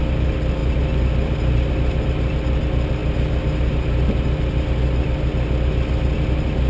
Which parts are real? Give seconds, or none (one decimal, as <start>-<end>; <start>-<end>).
0.0-6.7